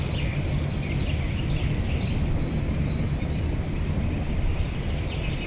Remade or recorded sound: recorded